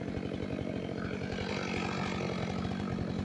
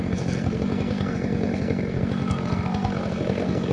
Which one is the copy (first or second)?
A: second